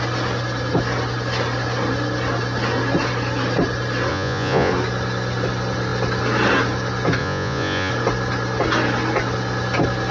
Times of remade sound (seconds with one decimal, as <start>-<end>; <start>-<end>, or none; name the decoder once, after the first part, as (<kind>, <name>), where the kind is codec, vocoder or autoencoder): 4.1-4.7 (vocoder, Vocos); 7.2-7.9